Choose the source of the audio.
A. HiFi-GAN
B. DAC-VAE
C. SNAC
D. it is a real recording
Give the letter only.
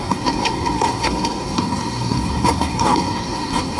C